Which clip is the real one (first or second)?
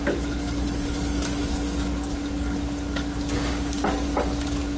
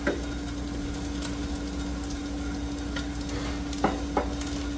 second